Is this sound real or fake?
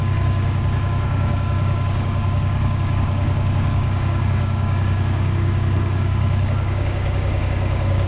fake